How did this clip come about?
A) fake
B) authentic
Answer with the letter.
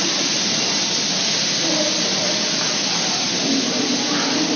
B